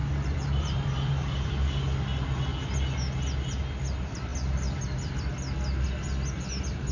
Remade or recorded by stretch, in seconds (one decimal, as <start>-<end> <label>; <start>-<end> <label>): 0.0-1.5 remade; 1.5-6.9 recorded